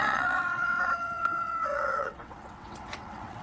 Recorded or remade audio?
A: remade